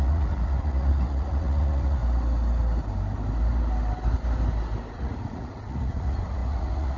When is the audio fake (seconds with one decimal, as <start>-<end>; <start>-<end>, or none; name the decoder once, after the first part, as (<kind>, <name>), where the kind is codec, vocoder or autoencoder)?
0.0-2.0 (vocoder, Vocos); 4.9-7.0